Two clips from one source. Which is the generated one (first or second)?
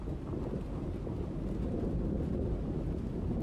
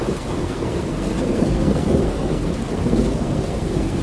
second